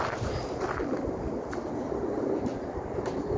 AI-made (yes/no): no